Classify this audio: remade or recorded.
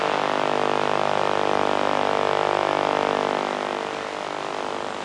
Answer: recorded